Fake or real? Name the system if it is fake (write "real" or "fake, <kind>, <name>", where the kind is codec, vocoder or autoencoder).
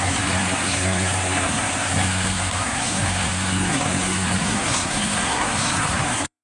fake, codec, SNAC